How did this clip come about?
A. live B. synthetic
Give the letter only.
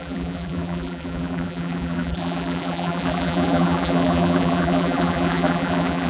B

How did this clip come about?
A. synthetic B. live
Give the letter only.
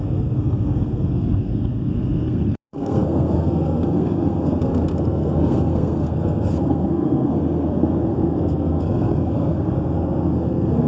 A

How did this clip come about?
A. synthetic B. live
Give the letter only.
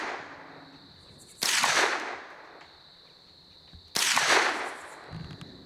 B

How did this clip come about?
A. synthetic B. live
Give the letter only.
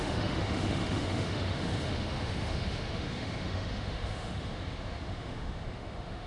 A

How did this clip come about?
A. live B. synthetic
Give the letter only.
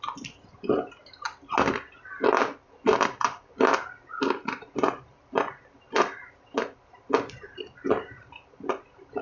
A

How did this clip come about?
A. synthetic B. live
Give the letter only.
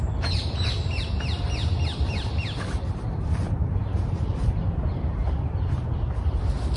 A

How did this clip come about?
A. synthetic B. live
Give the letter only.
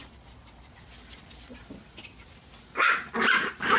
B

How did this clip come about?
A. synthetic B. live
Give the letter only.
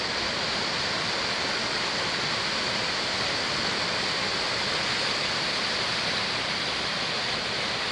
B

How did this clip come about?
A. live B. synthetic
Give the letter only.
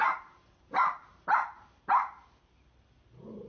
A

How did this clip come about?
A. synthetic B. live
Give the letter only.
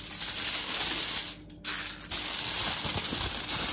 B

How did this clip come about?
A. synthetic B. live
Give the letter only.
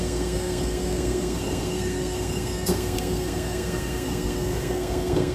A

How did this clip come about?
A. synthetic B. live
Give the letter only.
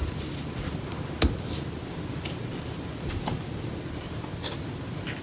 B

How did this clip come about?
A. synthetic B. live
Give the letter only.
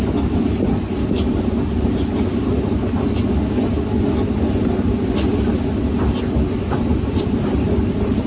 B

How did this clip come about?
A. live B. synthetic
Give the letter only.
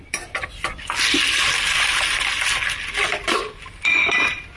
A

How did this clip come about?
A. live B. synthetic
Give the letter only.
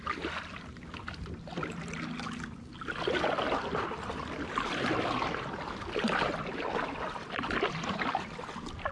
B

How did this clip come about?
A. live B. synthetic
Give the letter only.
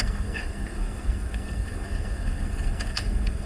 B